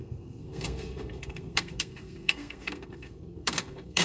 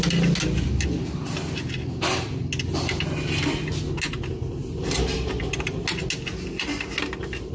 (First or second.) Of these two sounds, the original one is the second